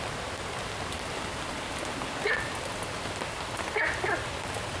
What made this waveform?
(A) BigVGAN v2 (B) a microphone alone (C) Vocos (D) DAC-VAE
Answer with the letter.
B